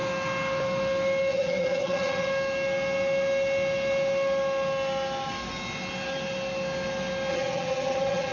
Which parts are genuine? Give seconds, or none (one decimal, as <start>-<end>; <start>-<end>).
0.0-1.3; 2.3-7.3